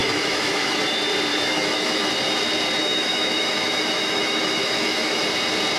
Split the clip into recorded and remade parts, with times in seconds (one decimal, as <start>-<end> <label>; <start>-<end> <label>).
0.0-0.8 remade; 0.8-1.3 recorded; 1.3-2.1 remade; 2.1-2.8 recorded; 2.8-5.2 remade; 5.2-5.8 recorded